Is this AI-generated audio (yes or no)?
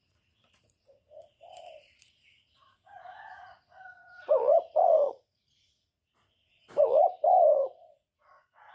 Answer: yes